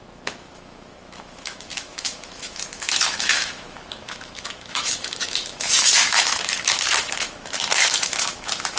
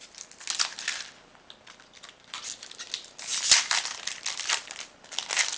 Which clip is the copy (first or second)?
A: first